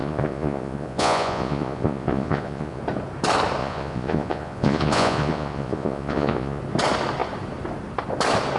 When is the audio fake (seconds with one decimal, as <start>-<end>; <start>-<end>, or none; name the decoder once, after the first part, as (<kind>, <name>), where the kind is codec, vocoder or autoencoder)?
0.0-2.8 (vocoder, Vocos); 3.6-6.6